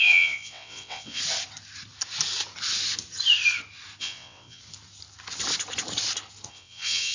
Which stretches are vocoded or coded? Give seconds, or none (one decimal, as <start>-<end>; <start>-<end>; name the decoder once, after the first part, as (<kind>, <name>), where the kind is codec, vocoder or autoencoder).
0.0-1.2 (vocoder, WaveNeXt); 4.0-4.6; 6.5-7.1